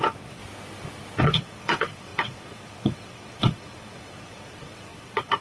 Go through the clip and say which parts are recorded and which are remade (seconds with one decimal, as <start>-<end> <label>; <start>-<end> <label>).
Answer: 0.0-0.4 remade; 0.4-1.2 recorded; 1.2-5.4 remade